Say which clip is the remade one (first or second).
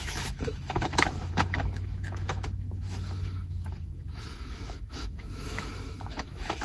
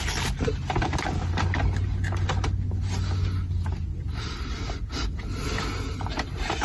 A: first